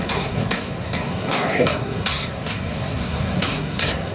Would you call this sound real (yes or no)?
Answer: no